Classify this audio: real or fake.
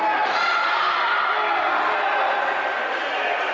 real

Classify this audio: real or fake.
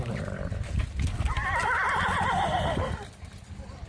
real